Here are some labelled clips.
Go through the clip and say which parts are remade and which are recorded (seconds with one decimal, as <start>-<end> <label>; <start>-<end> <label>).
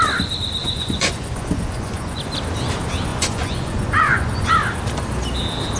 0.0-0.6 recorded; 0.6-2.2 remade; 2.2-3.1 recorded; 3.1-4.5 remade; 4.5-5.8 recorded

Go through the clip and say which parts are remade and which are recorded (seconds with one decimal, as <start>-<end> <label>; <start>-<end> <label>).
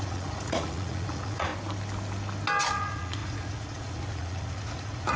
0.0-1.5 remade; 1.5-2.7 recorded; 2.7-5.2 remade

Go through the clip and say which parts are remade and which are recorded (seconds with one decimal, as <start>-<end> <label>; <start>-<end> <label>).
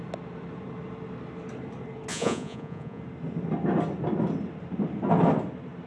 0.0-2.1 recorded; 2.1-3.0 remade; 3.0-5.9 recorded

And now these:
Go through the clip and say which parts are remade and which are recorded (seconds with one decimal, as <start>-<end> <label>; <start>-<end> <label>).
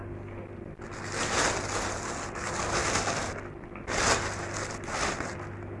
0.0-5.8 recorded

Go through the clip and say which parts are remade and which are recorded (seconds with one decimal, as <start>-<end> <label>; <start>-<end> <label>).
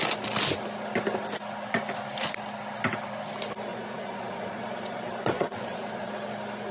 0.0-3.7 recorded; 3.7-6.1 remade; 6.1-6.7 recorded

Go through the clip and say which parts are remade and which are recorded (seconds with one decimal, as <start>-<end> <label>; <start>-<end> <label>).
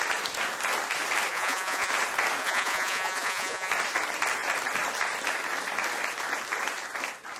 0.0-1.3 recorded; 1.3-1.9 remade; 1.9-2.4 recorded; 2.4-3.7 remade; 3.7-7.4 recorded